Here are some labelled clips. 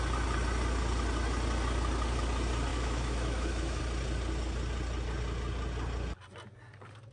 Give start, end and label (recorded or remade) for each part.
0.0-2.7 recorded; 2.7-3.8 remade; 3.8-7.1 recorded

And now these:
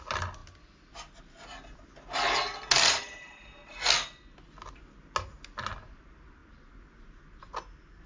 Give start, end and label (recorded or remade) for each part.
0.0-8.1 recorded